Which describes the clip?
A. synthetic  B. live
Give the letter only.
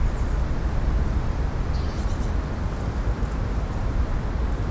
B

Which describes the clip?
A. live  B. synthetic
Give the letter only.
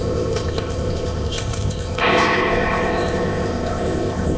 B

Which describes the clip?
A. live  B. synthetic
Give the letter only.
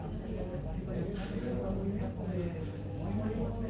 A